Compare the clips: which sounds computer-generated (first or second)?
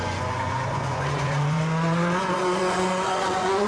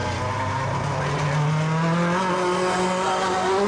first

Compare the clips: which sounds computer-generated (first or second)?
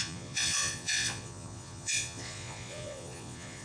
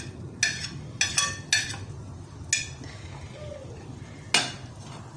first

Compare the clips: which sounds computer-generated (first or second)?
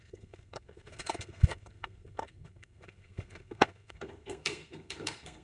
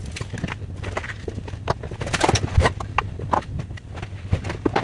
first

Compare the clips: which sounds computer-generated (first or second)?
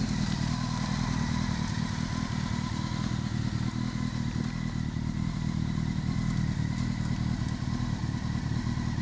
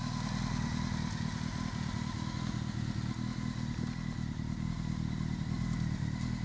first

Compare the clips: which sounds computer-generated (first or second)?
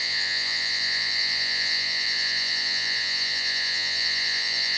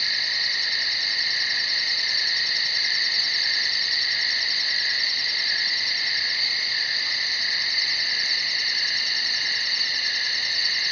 first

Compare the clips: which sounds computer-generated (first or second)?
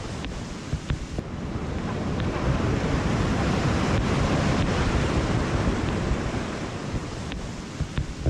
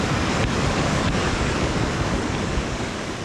second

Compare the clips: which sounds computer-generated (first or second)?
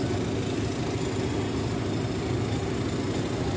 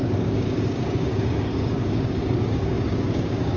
second